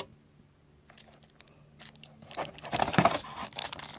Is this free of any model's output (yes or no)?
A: yes